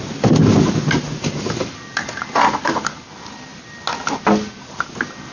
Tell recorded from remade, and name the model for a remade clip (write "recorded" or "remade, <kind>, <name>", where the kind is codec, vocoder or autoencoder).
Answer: recorded